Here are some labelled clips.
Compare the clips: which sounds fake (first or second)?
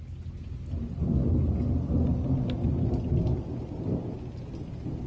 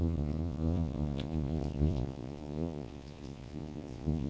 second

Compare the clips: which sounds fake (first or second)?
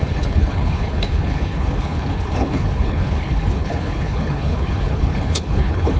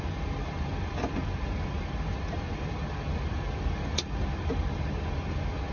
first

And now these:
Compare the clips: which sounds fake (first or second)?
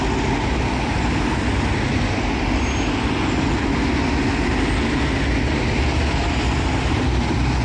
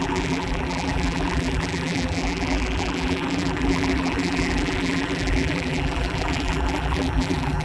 second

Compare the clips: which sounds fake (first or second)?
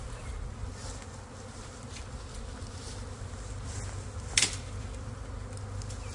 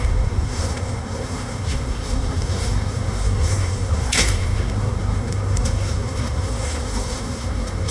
second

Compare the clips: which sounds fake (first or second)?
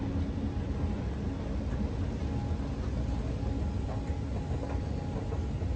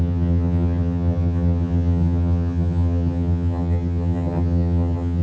second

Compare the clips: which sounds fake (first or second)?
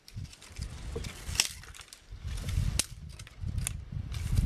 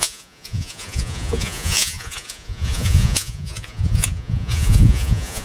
second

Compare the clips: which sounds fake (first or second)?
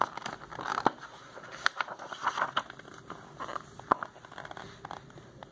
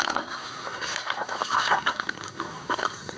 second